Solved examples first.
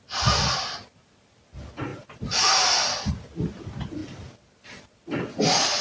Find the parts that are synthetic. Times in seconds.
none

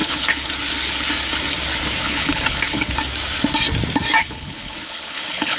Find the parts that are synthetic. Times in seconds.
0.0-0.5 (codec, HILCodec); 2.0-2.9; 4.2-5.6

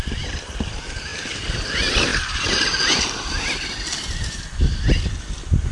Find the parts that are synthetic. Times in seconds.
none

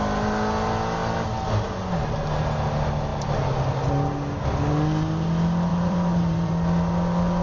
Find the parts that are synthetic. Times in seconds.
5.7-6.5 (vocoder, BigVGAN v2)

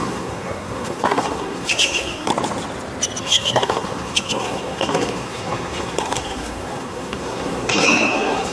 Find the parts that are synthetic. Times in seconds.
0.0-2.3 (codec, SNAC); 3.2-8.5

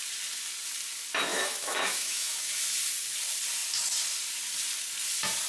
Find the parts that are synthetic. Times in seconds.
1.3-2.6 (autoencoder, DAC-VAE)